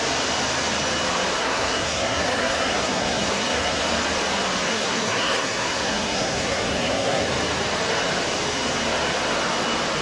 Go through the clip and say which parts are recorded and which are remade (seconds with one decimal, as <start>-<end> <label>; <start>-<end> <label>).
0.0-1.4 recorded; 1.4-3.8 remade; 3.8-4.7 recorded; 4.7-7.3 remade; 7.3-10.0 recorded